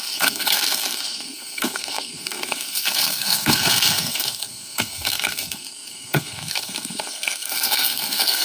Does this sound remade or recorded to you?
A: remade